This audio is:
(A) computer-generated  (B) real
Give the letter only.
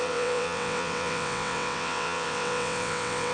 A